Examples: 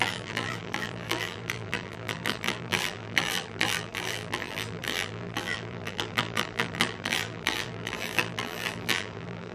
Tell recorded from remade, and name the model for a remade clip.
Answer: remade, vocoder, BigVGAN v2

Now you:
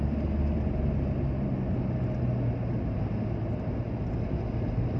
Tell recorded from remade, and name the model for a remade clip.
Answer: recorded